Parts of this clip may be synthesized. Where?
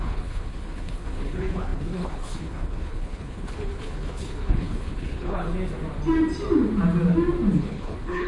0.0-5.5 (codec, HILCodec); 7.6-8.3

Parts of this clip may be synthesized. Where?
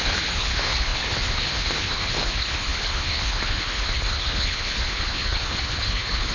0.0-6.3 (codec, HILCodec)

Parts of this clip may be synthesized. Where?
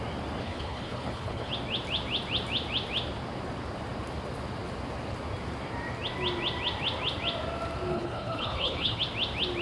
0.4-1.5 (codec, HILCodec); 7.9-9.0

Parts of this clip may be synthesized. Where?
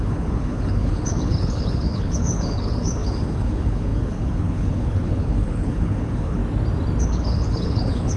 0.0-6.4 (codec, HILCodec); 7.0-8.2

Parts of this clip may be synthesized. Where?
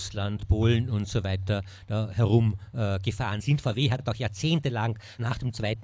0.0-0.4 (codec, HILCodec); 3.4-4.0; 5.2-5.8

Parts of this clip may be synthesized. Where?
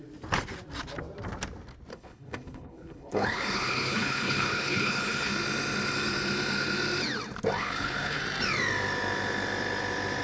1.9-5.3 (codec, HILCodec); 7.6-8.2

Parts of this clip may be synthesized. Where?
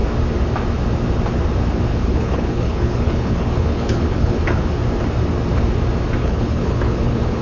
1.9-4.8 (codec, HILCodec); 6.2-7.4